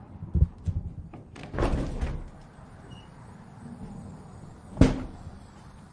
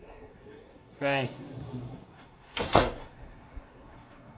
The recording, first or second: first